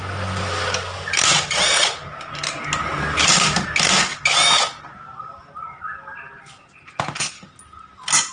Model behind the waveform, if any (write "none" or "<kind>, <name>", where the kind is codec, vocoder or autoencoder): none